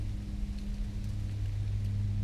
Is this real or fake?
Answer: real